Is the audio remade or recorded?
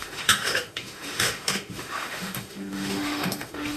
remade